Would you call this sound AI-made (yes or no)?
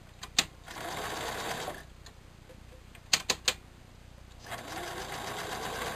no